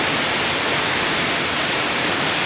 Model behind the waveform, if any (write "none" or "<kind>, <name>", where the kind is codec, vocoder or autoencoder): none